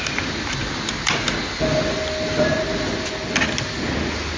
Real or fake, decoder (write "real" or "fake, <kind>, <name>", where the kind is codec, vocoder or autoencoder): real